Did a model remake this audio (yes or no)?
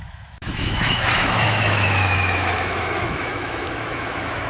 yes